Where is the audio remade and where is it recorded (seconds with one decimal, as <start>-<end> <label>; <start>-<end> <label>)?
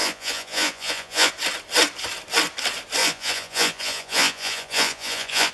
0.0-1.3 remade; 1.3-3.0 recorded; 3.0-5.5 remade